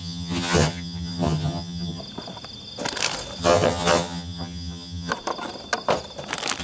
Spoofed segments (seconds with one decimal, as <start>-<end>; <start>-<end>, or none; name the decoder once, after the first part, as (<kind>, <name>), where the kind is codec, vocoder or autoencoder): 0.0-2.0 (vocoder, HiFi-GAN); 3.4-5.1